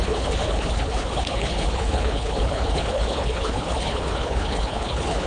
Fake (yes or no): yes